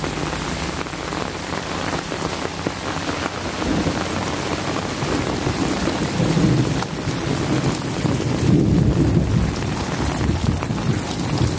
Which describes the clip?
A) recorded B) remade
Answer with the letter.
A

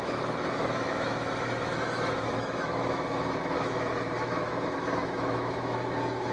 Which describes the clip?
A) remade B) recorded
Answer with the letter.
A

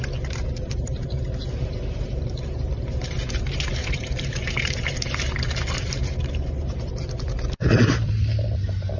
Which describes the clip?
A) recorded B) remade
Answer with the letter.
B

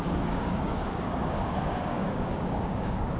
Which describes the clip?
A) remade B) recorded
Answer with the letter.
A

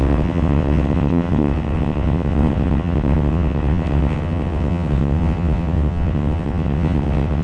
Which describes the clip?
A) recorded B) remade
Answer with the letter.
B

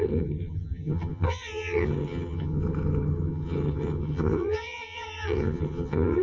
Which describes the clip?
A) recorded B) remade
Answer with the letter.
B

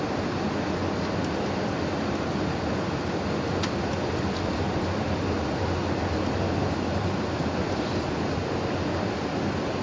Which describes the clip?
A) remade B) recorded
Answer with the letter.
B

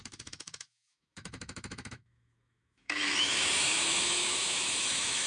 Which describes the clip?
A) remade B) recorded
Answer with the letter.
A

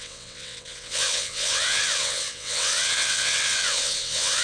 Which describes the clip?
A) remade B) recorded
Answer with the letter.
A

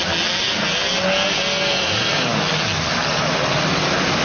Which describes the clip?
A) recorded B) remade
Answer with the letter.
A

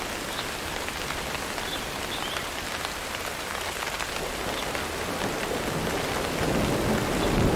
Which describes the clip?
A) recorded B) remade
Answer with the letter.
A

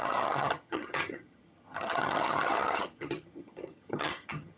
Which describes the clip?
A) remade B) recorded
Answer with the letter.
A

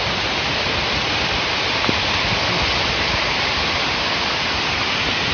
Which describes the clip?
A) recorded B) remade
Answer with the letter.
A